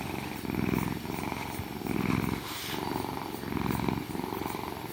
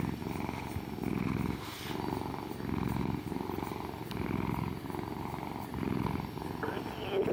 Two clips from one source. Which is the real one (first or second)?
second